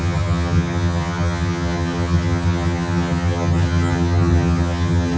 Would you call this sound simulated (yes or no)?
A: yes